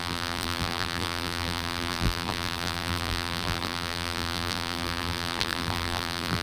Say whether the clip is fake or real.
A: fake